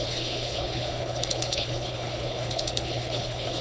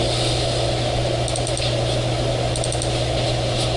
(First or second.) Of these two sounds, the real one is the second